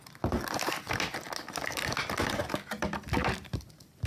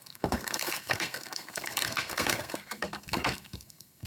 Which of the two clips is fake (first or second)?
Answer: second